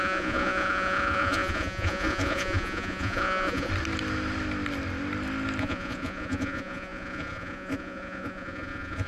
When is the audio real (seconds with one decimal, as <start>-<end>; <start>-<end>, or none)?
3.7-5.6